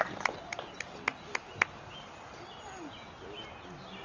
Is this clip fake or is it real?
real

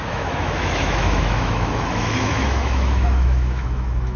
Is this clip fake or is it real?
fake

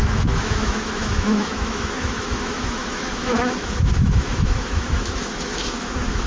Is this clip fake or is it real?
fake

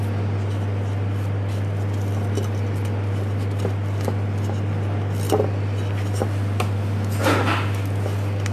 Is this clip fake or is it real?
real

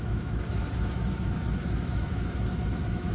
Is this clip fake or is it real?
fake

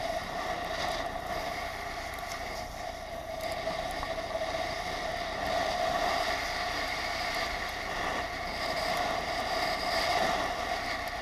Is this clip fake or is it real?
real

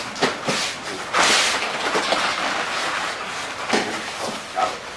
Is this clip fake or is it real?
real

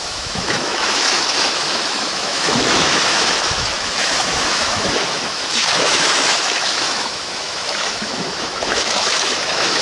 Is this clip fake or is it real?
fake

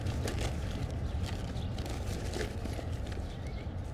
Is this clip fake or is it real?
real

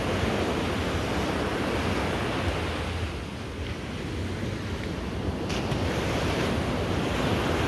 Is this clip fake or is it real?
real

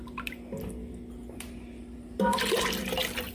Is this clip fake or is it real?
real